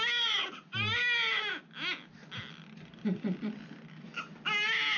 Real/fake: real